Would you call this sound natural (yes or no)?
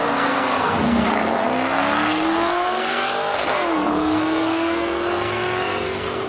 no